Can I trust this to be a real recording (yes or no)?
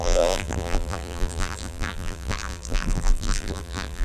no